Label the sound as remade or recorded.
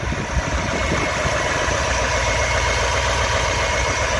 remade